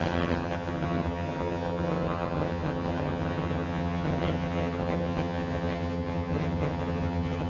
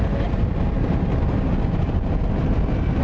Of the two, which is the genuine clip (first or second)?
second